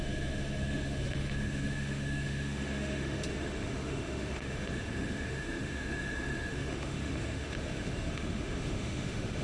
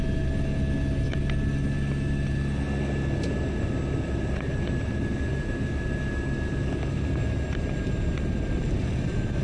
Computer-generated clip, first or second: first